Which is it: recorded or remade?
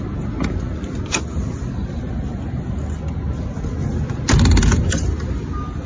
recorded